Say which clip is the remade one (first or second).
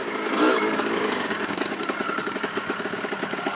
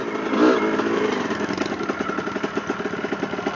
first